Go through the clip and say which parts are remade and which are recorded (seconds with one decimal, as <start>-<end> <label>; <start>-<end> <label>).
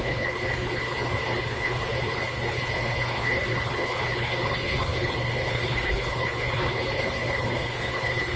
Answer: 0.0-8.4 remade